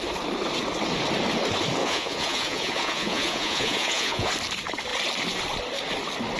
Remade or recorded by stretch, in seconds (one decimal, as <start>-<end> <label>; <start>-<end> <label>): 0.0-1.8 recorded; 1.8-4.3 remade; 4.3-6.4 recorded